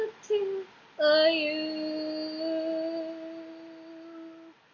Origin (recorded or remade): recorded